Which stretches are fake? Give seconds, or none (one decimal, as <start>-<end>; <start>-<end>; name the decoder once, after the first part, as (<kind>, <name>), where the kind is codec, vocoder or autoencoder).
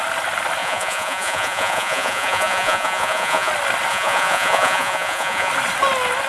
0.6-3.5 (vocoder, Vocos); 3.9-5.5